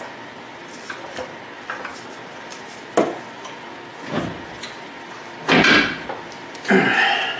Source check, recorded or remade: recorded